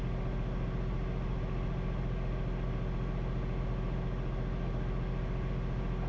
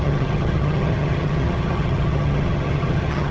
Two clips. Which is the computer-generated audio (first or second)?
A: second